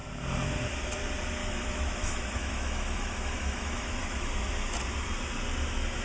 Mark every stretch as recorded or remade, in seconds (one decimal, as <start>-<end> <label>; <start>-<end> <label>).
0.0-1.4 recorded; 1.4-4.3 remade; 4.3-6.0 recorded